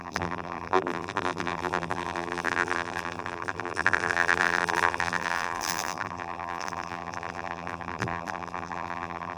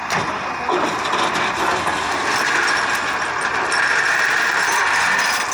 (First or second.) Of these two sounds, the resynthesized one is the first